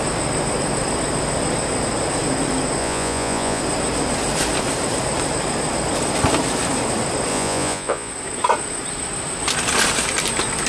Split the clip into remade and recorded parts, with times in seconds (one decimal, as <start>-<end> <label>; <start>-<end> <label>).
0.0-2.8 recorded; 2.8-3.6 remade; 3.6-7.3 recorded; 7.3-8.1 remade; 8.1-10.7 recorded